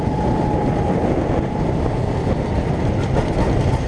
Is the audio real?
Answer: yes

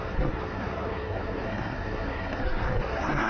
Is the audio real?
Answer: no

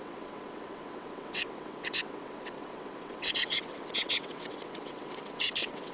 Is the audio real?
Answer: no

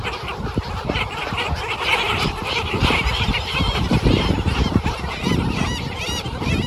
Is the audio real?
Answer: no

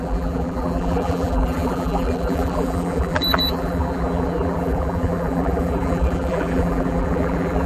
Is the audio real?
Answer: no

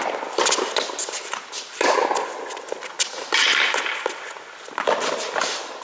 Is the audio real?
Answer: yes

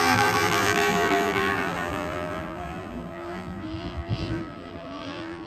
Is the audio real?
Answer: no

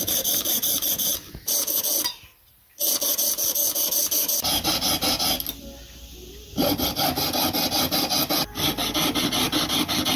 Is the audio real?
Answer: yes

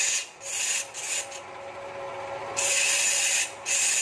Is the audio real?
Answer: yes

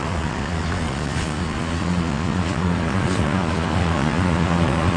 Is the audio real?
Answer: no